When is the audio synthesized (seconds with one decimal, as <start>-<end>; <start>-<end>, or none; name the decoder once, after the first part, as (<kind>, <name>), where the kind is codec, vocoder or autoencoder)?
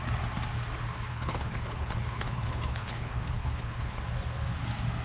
1.1-4.0 (codec, HILCodec)